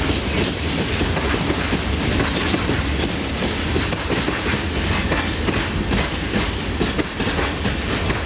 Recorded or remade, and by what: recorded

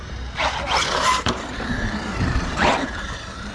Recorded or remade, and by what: remade, vocoder, BigVGAN v2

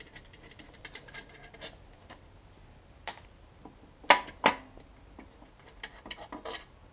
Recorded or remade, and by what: recorded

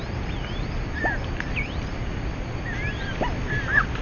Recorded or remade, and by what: remade, vocoder, BigVGAN v2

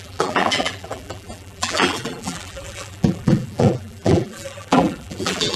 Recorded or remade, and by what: remade, vocoder, BigVGAN v2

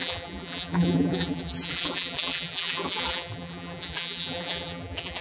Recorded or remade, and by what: remade, vocoder, BigVGAN v2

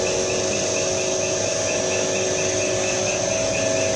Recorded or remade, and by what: recorded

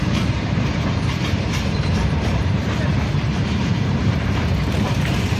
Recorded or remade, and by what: remade, vocoder, BigVGAN v2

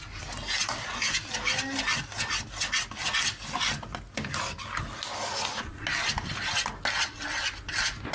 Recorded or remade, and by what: recorded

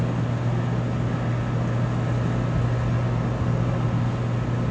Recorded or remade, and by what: recorded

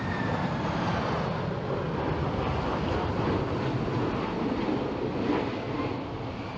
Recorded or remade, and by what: recorded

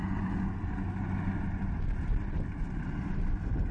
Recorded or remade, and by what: recorded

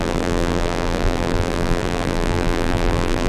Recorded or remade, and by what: remade, vocoder, BigVGAN v2